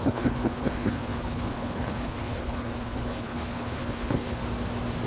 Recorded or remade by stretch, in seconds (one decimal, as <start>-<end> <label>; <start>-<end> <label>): 0.0-4.4 remade; 4.4-5.1 recorded